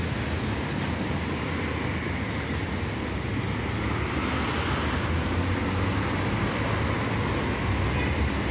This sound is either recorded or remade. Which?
recorded